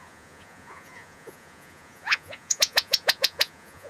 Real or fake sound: fake